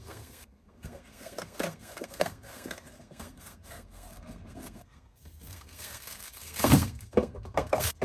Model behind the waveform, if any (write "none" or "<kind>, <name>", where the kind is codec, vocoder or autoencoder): codec, SNAC